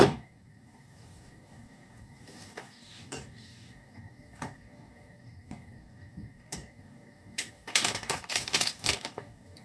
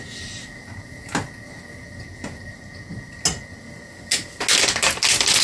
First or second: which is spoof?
first